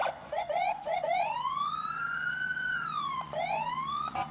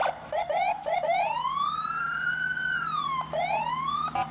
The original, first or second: second